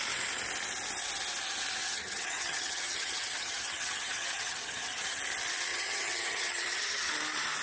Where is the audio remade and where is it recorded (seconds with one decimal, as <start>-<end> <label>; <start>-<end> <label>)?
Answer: 0.0-1.8 recorded; 1.8-5.2 remade; 5.2-5.7 recorded; 5.7-7.1 remade; 7.1-7.6 recorded